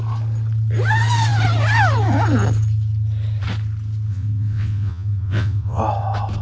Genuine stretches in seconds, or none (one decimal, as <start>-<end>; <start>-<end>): 0.0-4.1; 5.8-6.4